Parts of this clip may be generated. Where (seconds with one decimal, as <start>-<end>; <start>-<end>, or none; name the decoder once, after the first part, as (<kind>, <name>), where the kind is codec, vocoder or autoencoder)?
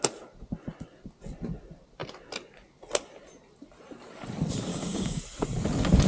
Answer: 4.7-5.2 (codec, DAC)